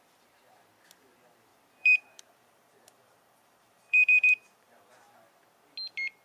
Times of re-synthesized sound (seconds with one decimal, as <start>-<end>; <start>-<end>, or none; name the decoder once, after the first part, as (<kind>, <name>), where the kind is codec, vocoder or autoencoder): 1.5-4.9 (vocoder, BigVGAN v2)